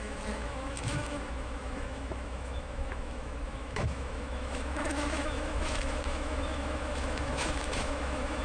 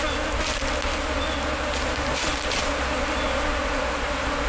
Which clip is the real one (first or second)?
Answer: second